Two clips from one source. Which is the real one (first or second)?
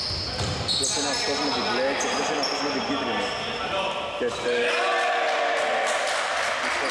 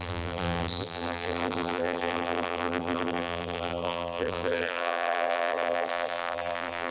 first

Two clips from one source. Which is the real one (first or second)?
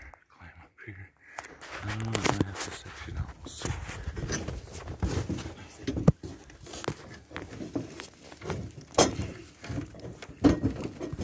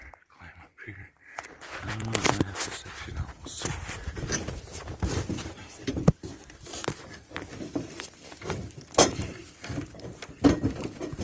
first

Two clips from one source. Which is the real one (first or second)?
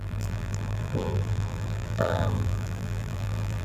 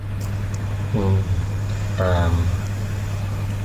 second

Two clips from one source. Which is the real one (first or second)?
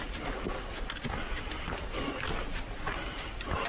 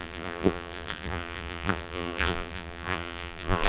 first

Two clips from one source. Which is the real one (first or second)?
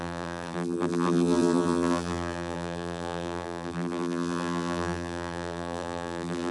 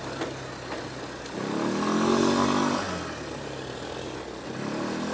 second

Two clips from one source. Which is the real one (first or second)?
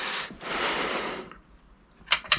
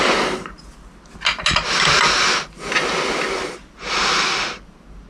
second